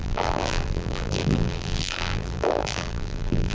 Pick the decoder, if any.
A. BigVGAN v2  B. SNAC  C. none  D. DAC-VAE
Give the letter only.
A